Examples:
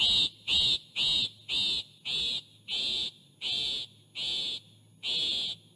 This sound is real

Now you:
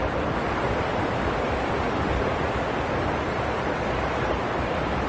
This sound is real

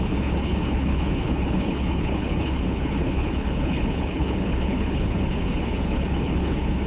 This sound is fake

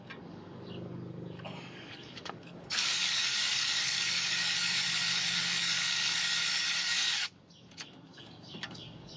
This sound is fake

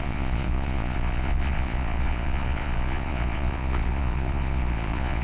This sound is fake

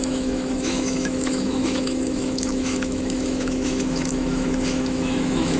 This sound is fake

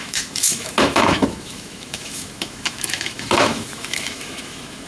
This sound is fake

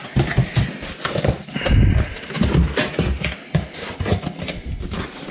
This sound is real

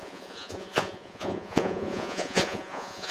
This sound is fake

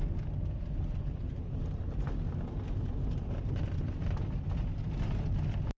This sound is real